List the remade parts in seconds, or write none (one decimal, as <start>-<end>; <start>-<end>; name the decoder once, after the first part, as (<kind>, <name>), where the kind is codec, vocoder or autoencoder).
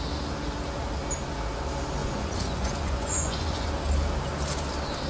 2.0-3.7 (vocoder, Vocos)